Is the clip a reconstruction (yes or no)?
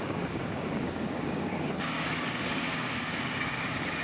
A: yes